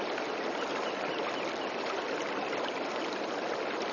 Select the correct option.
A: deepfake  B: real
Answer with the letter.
B